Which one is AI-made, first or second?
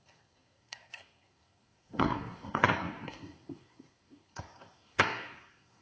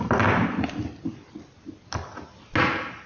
first